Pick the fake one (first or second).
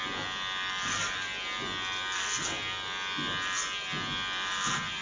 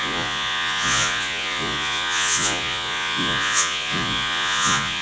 second